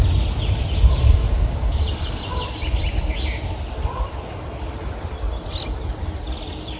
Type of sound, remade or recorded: recorded